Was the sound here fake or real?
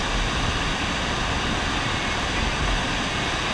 real